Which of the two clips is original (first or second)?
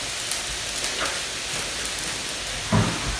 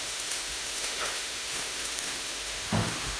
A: first